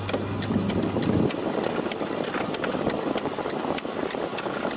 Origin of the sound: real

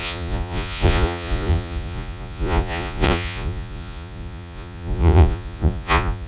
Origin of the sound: fake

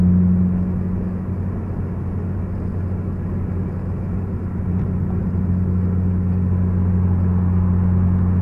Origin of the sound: real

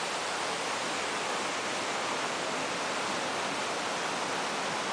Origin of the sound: real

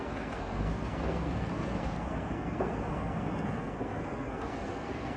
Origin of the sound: fake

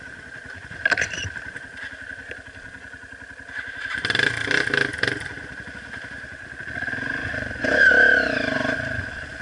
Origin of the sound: real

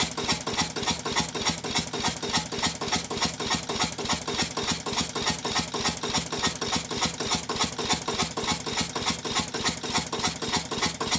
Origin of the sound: real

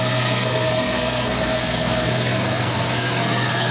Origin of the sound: fake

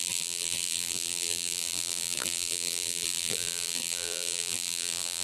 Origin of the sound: fake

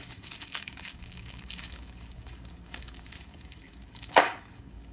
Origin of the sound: fake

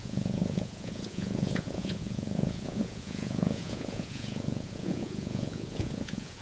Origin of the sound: fake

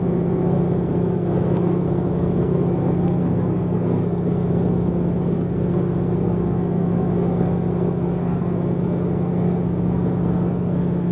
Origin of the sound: fake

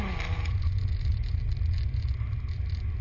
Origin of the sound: real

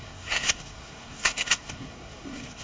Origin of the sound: fake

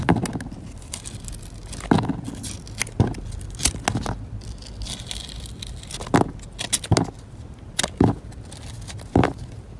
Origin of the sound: real